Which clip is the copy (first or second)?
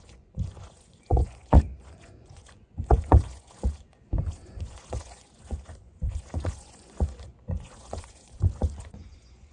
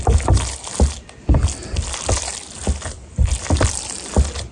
first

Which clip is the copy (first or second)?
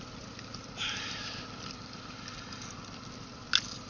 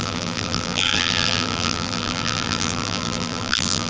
second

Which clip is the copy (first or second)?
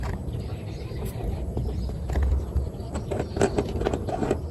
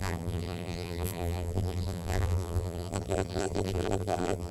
second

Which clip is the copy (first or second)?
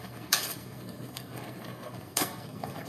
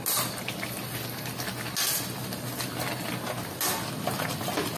first